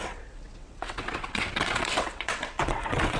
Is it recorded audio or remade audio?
remade